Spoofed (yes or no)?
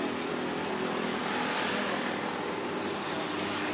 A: no